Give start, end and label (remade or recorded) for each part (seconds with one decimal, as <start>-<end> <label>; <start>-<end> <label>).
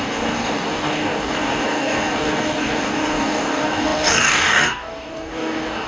0.0-5.9 remade